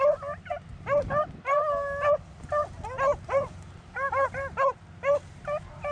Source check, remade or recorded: recorded